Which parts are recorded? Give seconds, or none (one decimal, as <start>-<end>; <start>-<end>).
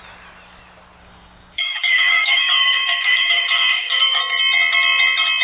0.0-1.0; 4.2-5.4